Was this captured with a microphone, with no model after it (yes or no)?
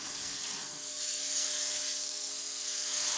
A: no